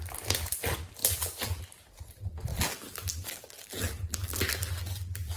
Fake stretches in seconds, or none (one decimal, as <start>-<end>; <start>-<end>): 1.0-1.6; 2.5-5.4